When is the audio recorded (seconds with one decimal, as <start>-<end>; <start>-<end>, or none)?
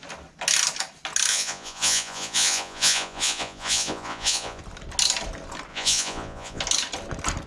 0.0-1.3; 4.6-5.7; 6.6-7.5